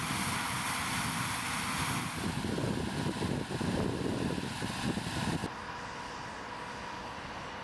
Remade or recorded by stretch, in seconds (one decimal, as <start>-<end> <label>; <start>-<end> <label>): 0.0-7.6 recorded